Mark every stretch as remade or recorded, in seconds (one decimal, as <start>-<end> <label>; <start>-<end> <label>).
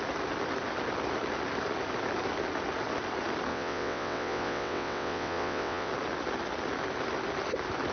0.0-3.5 recorded; 3.5-5.9 remade; 5.9-7.9 recorded